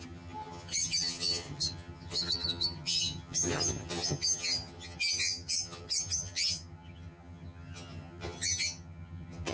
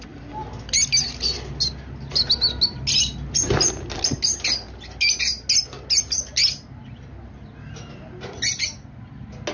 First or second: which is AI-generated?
first